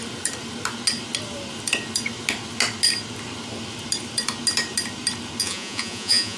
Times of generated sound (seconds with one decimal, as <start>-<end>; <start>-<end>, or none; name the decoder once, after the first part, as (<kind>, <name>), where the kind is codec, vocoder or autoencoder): 5.4-6.4 (vocoder, Vocos)